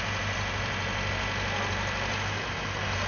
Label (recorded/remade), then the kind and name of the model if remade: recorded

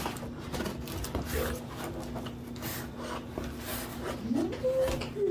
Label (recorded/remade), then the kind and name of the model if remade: recorded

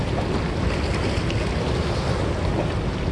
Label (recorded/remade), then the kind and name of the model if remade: recorded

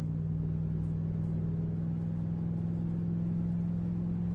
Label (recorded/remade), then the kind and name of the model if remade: recorded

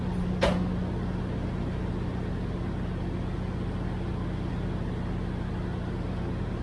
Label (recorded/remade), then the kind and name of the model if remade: recorded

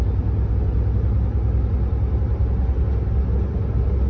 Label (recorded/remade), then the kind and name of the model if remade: recorded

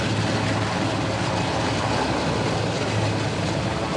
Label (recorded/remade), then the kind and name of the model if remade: recorded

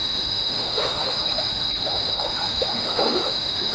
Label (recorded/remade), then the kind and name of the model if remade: remade, autoencoder, DAC-VAE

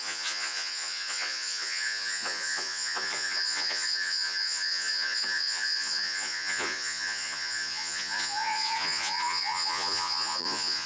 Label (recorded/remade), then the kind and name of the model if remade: remade, vocoder, Vocos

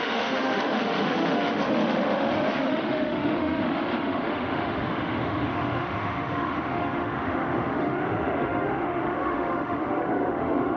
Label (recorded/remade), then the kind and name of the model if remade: remade, autoencoder, DAC-VAE